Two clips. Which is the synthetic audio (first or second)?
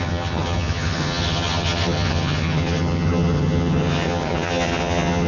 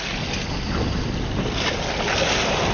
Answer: first